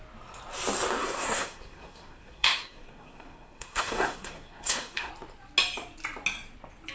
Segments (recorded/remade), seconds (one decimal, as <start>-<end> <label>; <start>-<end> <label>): 0.0-1.0 recorded; 1.0-5.1 remade; 5.1-6.9 recorded